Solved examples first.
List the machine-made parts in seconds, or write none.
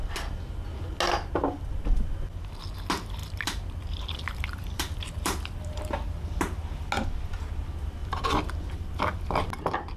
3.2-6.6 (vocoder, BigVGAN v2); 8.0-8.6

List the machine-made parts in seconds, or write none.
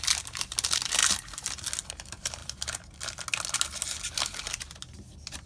0.0-1.0 (vocoder, BigVGAN v2); 1.9-2.4; 4.9-5.5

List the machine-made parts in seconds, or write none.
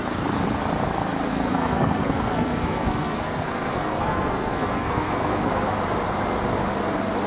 1.3-5.7 (codec, SNAC)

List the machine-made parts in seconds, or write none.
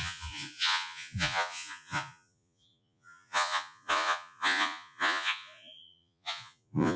0.0-7.0 (vocoder, Vocos)